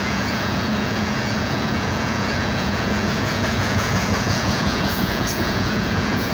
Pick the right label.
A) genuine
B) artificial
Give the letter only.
B